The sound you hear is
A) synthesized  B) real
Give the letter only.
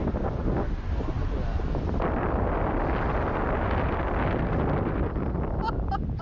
B